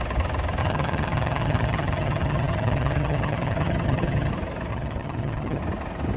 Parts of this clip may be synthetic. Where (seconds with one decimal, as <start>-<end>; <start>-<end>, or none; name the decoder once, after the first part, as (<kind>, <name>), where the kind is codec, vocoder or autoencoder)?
0.6-4.3 (vocoder, HiFi-GAN); 4.7-5.6